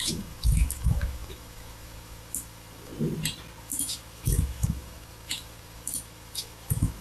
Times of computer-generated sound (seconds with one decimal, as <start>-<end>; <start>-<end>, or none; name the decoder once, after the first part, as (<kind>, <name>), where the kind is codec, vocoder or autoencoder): 0.0-2.9 (autoencoder, DAC-VAE); 3.6-7.0